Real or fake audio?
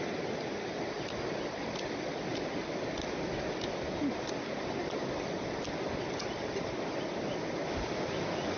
real